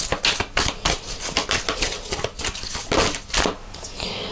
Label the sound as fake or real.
real